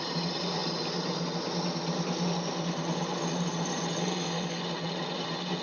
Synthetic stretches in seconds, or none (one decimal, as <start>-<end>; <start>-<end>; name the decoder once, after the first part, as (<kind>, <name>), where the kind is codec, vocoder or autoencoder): 4.0-4.6 (codec, SNAC)